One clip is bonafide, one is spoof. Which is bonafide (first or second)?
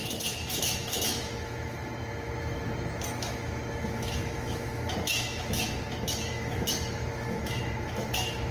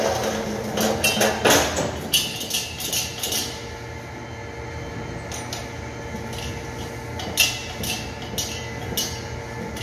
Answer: second